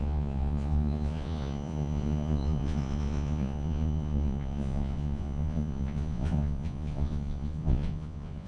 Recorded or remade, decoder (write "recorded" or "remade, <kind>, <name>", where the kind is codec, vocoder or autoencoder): remade, vocoder, Vocos